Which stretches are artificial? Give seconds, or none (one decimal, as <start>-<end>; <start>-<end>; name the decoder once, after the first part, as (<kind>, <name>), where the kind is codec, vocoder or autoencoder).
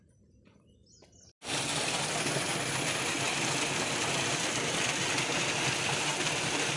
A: 6.1-6.8 (vocoder, BigVGAN v2)